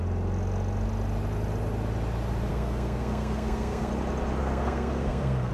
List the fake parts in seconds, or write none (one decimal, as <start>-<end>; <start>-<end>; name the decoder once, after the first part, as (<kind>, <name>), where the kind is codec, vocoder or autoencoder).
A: 2.5-3.9 (codec, SNAC); 4.4-5.5